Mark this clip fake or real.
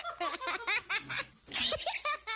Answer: real